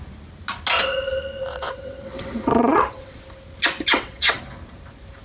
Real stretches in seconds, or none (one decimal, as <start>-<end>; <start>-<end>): 0.0-1.5; 3.2-3.9; 4.4-5.2